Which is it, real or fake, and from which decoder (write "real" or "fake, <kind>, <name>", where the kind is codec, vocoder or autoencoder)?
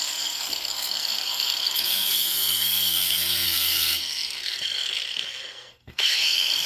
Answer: fake, codec, SNAC